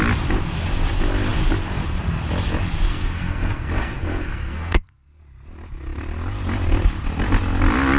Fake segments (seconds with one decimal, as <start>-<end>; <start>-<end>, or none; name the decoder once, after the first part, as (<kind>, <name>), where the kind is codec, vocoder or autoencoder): 2.9-5.2 (codec, SNAC)

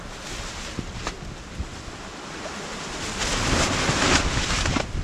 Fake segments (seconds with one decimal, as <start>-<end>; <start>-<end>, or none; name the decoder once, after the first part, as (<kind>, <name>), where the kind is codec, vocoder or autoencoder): none

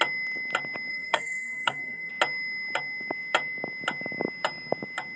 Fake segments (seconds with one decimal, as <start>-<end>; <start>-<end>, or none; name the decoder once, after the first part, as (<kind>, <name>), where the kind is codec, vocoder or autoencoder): 0.9-2.1 (codec, SNAC)

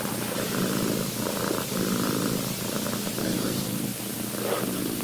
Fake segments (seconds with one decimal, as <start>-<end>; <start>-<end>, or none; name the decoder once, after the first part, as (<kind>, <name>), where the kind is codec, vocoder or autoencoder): 3.2-4.0 (codec, SNAC)

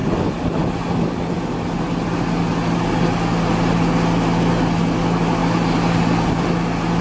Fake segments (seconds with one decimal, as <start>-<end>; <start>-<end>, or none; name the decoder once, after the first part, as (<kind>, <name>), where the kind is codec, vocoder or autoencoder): none

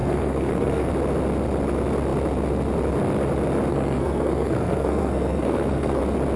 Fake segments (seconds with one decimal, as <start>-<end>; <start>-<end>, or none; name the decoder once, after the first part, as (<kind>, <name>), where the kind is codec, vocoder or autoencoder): 0.0-0.9 (codec, SNAC); 3.7-6.0